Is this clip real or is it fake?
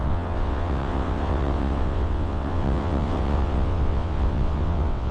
fake